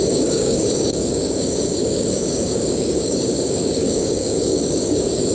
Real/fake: fake